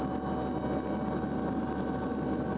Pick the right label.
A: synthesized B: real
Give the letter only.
B